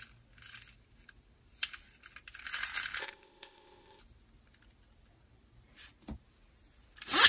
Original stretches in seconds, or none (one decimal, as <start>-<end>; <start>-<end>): 0.0-3.0; 4.0-7.3